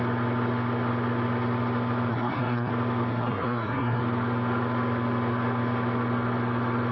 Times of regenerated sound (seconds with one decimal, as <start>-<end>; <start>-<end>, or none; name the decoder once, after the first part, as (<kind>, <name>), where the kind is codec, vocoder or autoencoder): 2.1-2.7 (codec, SNAC); 3.1-4.0